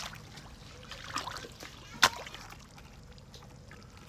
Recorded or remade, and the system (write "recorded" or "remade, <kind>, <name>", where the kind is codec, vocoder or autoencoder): recorded